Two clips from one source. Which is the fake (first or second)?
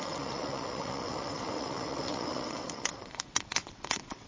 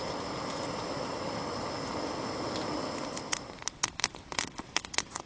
first